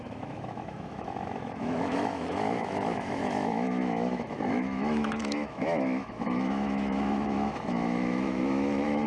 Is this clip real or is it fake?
fake